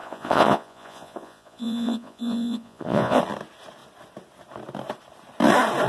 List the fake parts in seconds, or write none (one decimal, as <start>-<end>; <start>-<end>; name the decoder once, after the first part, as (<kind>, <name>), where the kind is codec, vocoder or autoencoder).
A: 0.0-3.2 (vocoder, Vocos)